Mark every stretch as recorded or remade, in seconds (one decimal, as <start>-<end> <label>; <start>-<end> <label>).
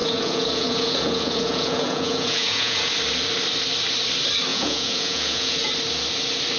0.0-2.9 remade; 2.9-4.5 recorded; 4.5-5.7 remade; 5.7-6.6 recorded